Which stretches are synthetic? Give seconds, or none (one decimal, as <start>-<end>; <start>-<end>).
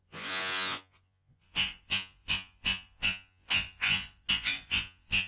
0.0-5.3